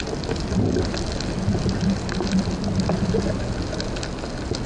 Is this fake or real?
real